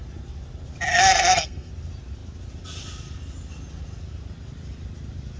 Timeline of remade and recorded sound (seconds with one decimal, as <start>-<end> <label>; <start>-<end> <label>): 0.0-0.9 recorded; 0.9-1.7 remade; 1.7-5.4 recorded